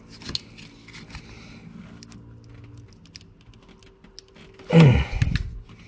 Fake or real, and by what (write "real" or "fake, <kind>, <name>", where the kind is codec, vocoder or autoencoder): real